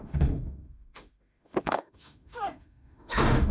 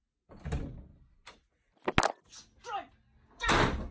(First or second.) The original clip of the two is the second